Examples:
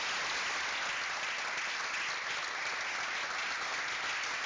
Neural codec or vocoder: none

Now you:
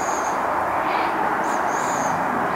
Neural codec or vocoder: vocoder, BigVGAN v2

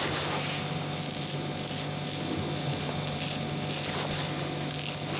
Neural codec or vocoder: none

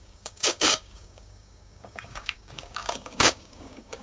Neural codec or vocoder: codec, DAC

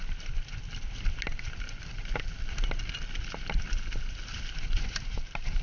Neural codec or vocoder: vocoder, BigVGAN v2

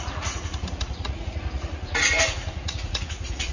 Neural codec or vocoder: vocoder, Vocos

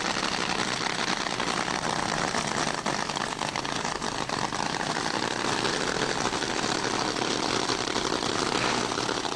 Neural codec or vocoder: vocoder, BigVGAN v2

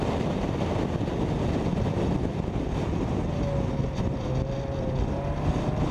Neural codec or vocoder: none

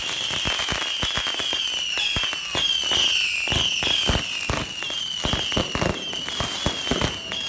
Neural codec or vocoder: none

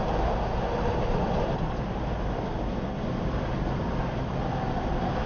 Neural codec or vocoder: none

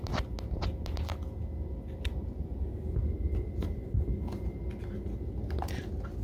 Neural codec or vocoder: none